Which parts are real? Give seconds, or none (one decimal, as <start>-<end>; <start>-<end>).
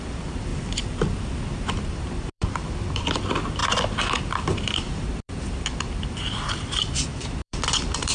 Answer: 0.5-1.8; 3.6-4.2